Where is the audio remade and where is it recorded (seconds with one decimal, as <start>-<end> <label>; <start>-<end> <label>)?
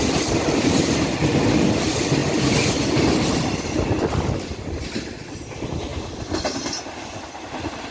0.0-7.9 recorded